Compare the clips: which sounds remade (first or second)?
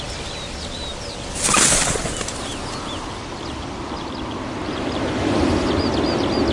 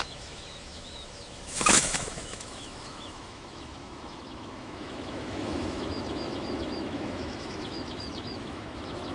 second